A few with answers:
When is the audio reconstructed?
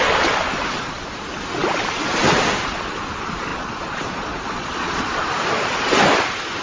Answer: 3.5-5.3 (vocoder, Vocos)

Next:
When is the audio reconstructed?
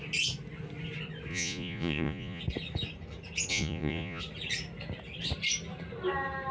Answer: 1.3-2.4 (vocoder, Vocos); 3.5-4.2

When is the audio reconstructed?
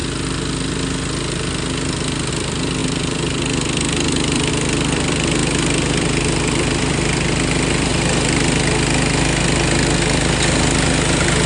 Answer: 2.3-5.4 (vocoder, BigVGAN v2); 6.0-7.9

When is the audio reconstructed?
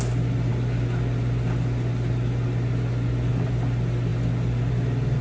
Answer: none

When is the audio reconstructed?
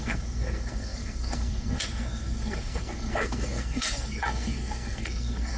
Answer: 0.0-5.6 (codec, SNAC)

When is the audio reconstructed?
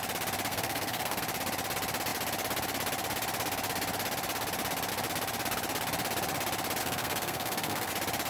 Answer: 0.5-1.2 (codec, SNAC); 6.8-7.9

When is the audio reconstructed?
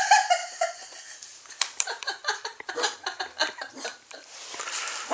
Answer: 0.4-3.2 (vocoder, BigVGAN v2); 3.9-4.4